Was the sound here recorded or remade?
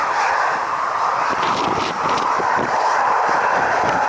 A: remade